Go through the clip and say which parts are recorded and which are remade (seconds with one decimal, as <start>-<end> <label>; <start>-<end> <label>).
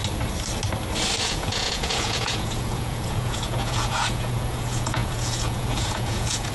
0.0-1.2 recorded; 1.2-6.5 remade